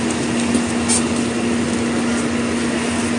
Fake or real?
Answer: real